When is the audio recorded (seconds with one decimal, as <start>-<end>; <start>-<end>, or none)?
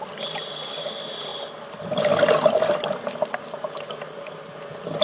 0.0-5.0